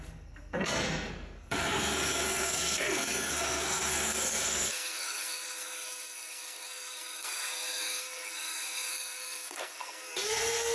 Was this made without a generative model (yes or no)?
no